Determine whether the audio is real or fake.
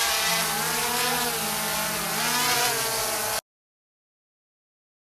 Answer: real